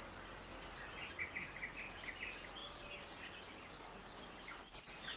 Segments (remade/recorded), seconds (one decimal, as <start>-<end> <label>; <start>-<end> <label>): 0.0-5.2 recorded